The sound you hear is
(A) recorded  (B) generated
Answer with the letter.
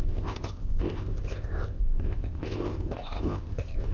B